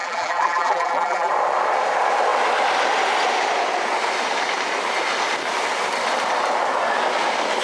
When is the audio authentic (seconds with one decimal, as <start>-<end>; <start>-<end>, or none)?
1.3-7.6

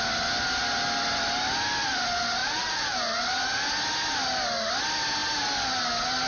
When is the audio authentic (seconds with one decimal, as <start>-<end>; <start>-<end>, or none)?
0.0-2.4; 3.0-6.3

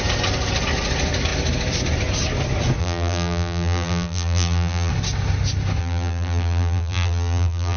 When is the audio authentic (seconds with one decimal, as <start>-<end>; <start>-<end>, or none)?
0.0-2.8; 4.9-5.8

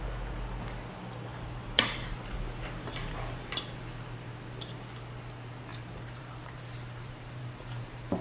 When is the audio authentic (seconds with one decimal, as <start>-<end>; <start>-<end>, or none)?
0.0-1.3; 3.6-5.7

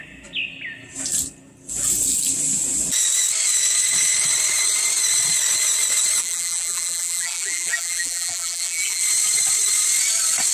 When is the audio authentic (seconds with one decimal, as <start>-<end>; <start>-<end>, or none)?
0.0-6.2; 9.0-10.5